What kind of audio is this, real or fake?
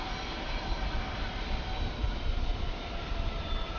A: real